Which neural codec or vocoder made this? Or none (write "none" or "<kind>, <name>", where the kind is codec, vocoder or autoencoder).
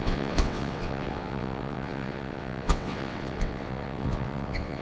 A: vocoder, WaveNeXt